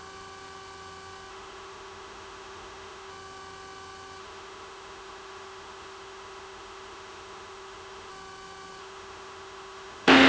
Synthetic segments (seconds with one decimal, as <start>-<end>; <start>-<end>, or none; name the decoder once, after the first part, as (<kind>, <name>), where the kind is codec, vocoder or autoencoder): 1.3-3.1 (autoencoder, DAC-VAE); 4.2-8.1; 8.8-10.3